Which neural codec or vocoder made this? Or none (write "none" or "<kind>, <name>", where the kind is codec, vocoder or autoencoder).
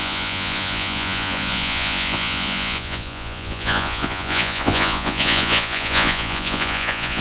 vocoder, Vocos